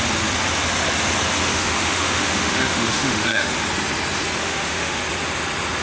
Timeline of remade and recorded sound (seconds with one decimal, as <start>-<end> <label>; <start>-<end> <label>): 0.0-1.5 recorded; 1.5-3.5 remade; 3.5-4.4 recorded; 4.4-5.0 remade; 5.0-5.8 recorded